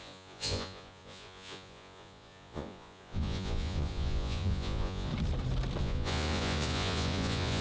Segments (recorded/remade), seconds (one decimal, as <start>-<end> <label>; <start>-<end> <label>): 0.0-5.1 remade; 5.1-5.8 recorded; 5.8-7.6 remade